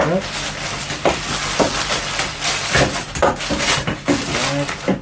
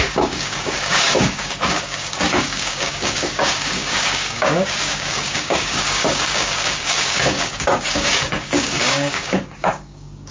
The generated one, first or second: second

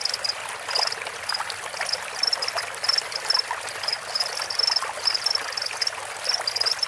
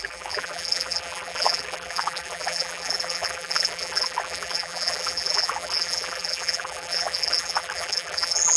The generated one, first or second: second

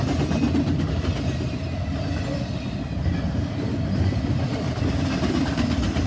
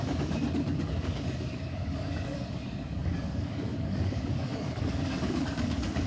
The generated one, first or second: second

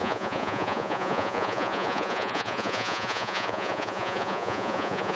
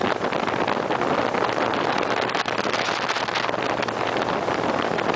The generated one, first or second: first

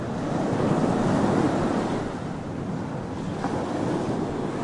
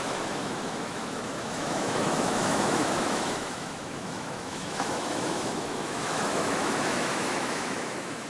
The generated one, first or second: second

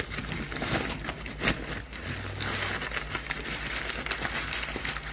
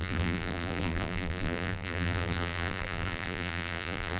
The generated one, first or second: second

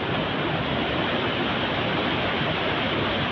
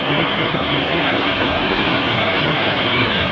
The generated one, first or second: second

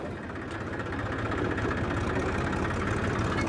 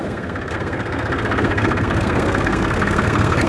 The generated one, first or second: second